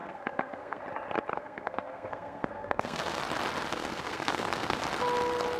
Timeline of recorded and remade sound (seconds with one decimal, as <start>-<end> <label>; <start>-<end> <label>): 0.0-0.8 remade; 0.8-1.3 recorded; 1.3-3.2 remade; 3.2-3.7 recorded; 3.7-4.8 remade; 4.8-5.6 recorded